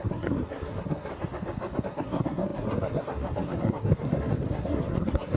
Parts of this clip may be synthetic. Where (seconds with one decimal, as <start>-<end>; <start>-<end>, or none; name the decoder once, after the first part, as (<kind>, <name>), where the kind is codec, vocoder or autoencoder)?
0.0-1.1 (codec, SNAC); 1.8-5.4